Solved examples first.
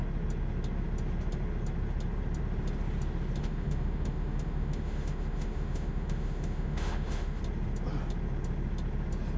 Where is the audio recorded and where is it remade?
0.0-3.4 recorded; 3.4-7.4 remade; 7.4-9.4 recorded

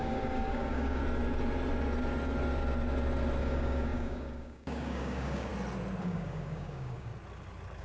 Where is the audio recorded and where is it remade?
0.0-1.0 remade; 1.0-3.4 recorded; 3.4-5.5 remade; 5.5-6.0 recorded; 6.0-7.1 remade; 7.1-7.8 recorded

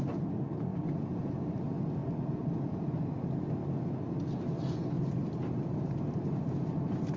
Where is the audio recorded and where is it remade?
0.0-0.7 recorded; 0.7-1.6 remade; 1.6-5.2 recorded; 5.2-6.7 remade; 6.7-7.2 recorded